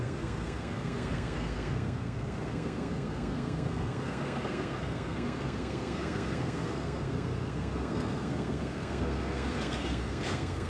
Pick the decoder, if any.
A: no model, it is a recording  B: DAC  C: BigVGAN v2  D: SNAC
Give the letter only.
D